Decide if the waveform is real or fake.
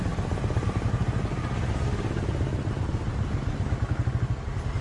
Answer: real